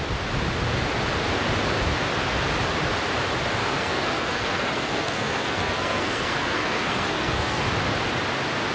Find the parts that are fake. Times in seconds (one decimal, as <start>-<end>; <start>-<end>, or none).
3.6-7.6